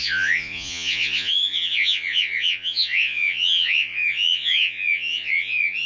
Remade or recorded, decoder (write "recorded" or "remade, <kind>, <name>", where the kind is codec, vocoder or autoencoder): remade, vocoder, Vocos